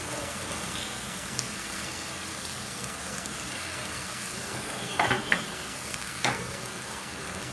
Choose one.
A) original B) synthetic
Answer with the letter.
B